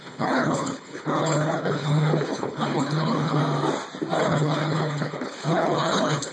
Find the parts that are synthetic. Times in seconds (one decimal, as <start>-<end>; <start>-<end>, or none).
0.0-3.4; 4.2-6.3